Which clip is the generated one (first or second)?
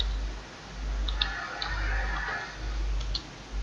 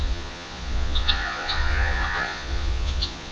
second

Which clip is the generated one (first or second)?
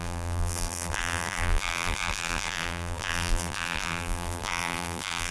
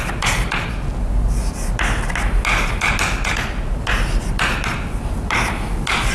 first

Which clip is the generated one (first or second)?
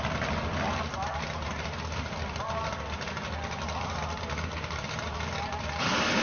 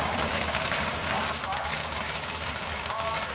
second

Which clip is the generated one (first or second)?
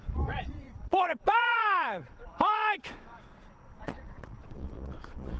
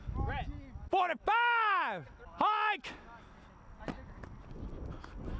first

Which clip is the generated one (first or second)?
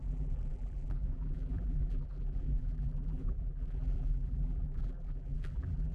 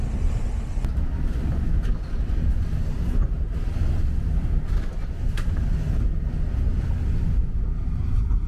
first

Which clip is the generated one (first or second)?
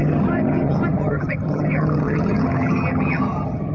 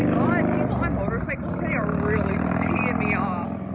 first